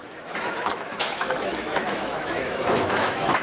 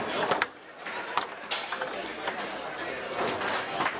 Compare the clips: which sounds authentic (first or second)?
second